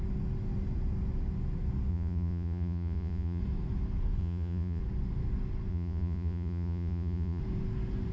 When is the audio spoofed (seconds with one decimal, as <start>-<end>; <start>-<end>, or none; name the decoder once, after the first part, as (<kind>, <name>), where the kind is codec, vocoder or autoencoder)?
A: 1.9-3.4 (vocoder, Vocos); 4.2-4.8; 5.7-7.4